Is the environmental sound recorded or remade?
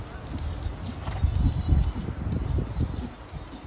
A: recorded